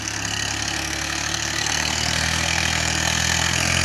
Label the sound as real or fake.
fake